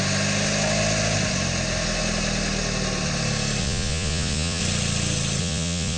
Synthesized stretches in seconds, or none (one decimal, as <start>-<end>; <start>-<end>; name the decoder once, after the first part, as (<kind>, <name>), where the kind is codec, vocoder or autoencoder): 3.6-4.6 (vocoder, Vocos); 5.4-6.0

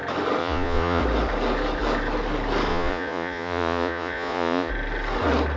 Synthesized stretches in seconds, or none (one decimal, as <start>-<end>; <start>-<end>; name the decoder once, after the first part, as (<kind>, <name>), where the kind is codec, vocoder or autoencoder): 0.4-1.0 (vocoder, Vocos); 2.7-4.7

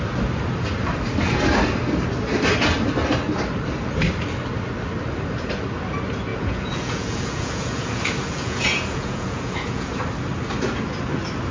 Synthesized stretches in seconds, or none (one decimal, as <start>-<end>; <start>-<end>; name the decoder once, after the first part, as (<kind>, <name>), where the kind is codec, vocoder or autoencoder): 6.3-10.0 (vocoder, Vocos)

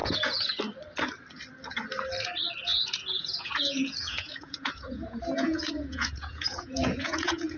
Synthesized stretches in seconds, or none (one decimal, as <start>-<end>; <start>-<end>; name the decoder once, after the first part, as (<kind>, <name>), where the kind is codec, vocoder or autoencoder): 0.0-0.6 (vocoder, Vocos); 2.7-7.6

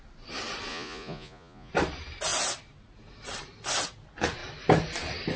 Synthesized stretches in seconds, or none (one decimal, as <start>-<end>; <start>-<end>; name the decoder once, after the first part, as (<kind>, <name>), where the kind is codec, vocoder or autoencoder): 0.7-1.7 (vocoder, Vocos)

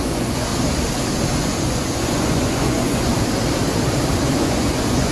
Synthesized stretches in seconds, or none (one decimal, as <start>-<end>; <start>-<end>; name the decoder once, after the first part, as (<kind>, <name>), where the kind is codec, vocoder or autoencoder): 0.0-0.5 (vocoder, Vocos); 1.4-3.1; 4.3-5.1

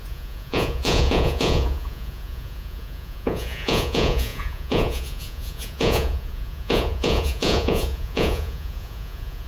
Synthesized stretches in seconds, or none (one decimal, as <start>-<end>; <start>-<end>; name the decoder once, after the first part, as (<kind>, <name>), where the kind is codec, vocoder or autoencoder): 0.0-9.5 (vocoder, Vocos)

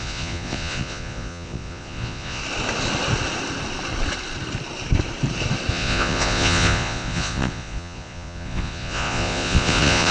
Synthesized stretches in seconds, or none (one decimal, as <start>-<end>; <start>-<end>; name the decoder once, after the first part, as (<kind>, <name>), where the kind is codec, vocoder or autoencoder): 0.0-2.4 (vocoder, Vocos); 5.7-10.1